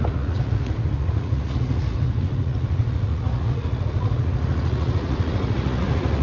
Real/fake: fake